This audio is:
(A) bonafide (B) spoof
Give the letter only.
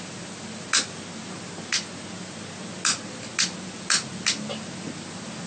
A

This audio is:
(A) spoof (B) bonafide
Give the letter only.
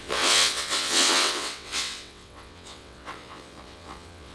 A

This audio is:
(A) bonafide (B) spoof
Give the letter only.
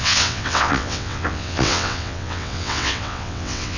B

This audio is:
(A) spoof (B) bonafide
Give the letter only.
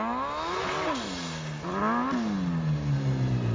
B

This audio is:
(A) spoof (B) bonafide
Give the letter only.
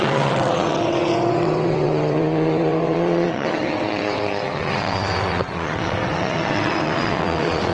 A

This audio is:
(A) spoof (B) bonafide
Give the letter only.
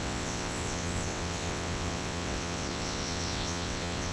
A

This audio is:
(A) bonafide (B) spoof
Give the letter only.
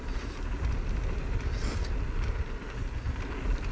A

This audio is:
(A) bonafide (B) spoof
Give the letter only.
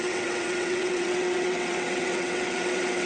B